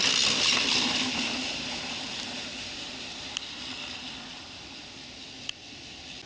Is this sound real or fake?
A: real